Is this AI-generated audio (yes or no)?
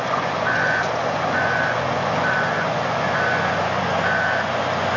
yes